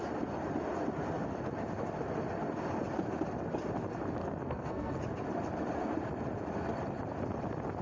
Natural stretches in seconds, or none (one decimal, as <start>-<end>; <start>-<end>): 0.0-4.2; 5.0-7.8